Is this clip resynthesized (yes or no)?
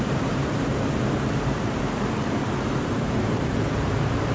yes